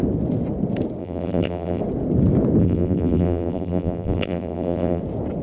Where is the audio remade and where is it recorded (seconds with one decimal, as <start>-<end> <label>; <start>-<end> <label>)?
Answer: 0.0-1.0 recorded; 1.0-1.8 remade; 1.8-2.6 recorded; 2.6-5.0 remade; 5.0-5.4 recorded